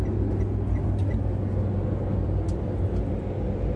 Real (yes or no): yes